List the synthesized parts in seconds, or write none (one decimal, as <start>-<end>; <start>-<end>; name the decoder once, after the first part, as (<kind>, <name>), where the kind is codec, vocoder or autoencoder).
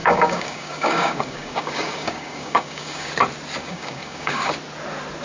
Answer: 0.0-3.1 (codec, DAC); 3.6-4.5